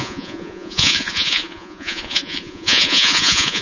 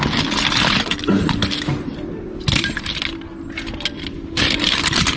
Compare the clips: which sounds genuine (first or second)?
second